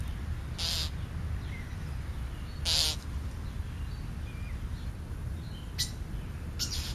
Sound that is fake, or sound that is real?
real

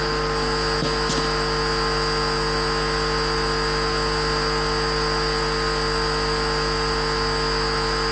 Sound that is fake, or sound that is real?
real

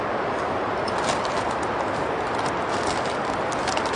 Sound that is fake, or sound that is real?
real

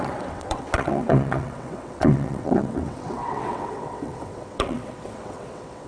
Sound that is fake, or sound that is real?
fake